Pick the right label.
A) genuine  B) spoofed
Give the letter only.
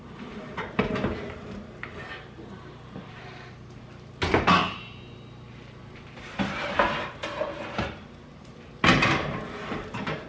B